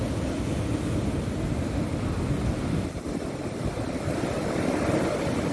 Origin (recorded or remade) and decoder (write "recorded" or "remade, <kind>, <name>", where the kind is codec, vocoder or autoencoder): recorded